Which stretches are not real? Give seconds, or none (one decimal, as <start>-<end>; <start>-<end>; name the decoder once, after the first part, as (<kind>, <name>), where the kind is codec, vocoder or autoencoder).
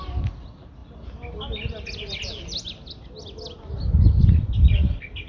none